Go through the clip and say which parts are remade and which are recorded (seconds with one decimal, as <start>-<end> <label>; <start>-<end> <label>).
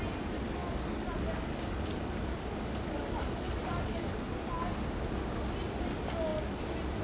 0.0-0.6 recorded; 0.6-4.2 remade; 4.2-7.0 recorded